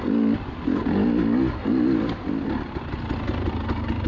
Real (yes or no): yes